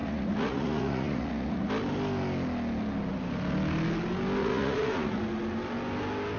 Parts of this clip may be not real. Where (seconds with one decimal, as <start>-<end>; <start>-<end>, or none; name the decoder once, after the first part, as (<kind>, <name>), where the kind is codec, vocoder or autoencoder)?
0.0-1.7 (vocoder, Vocos); 4.4-5.2